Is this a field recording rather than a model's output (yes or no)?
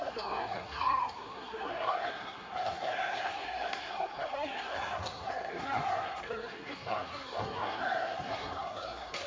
no